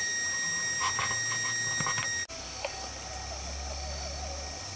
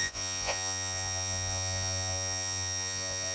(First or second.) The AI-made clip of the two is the second